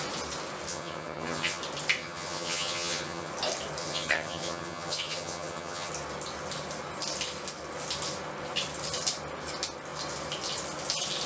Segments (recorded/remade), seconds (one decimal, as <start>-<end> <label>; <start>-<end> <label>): 0.0-0.7 recorded; 0.7-1.6 remade; 1.6-2.0 recorded; 2.0-3.3 remade; 3.3-3.8 recorded; 3.8-5.9 remade; 5.9-11.3 recorded

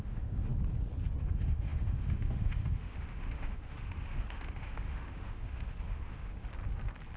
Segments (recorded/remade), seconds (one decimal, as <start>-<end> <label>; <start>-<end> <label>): 0.0-0.5 remade; 0.5-1.2 recorded; 1.2-6.5 remade; 6.5-7.2 recorded